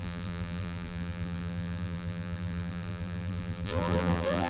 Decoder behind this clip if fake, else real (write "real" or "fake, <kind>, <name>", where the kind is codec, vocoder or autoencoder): fake, vocoder, BigVGAN v2